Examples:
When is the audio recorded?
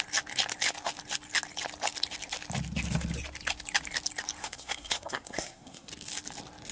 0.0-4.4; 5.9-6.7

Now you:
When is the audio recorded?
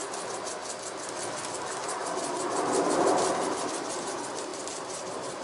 0.0-0.6; 3.8-4.5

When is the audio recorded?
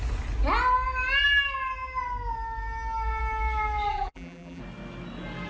0.0-3.9; 4.6-5.5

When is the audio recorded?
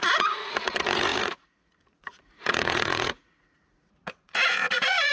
none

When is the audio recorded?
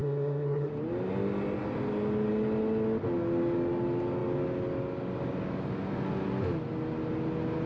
0.7-7.7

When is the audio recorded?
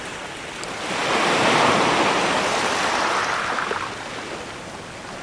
0.0-5.2